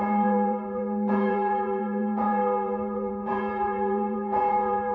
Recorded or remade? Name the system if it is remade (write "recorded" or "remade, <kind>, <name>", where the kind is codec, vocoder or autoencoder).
remade, vocoder, Vocos